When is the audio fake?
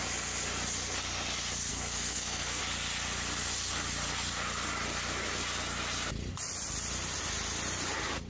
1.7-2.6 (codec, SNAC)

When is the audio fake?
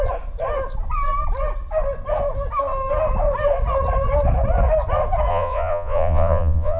5.3-6.8 (vocoder, Vocos)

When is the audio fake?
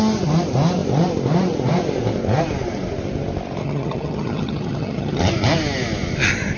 3.6-5.2 (vocoder, HiFi-GAN)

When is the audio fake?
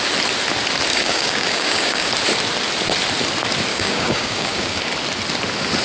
0.9-2.1 (codec, DAC); 3.7-4.8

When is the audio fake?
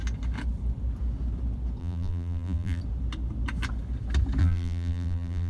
1.8-2.8 (vocoder, BigVGAN v2); 4.4-5.5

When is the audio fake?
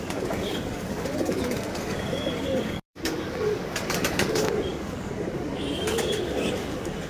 0.0-7.1 (codec, DAC)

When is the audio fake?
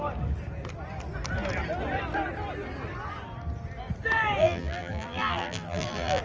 4.4-6.2 (vocoder, BigVGAN v2)